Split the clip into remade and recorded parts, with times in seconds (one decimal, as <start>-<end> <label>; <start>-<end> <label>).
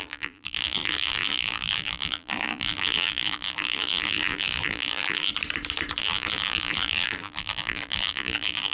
0.0-5.3 remade; 5.3-6.0 recorded; 6.0-8.7 remade